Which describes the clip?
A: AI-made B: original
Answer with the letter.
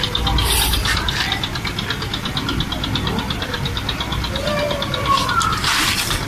B